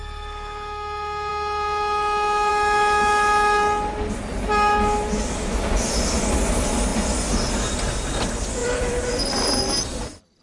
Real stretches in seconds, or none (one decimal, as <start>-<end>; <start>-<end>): 0.0-8.6; 9.7-10.4